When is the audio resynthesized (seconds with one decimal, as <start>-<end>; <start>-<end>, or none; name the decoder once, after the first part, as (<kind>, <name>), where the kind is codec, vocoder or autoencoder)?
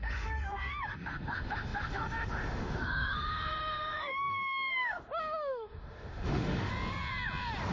0.0-6.7 (autoencoder, DAC-VAE)